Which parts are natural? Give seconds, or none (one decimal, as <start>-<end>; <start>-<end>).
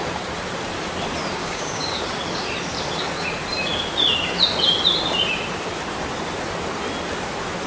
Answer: 0.0-1.4; 2.0-7.7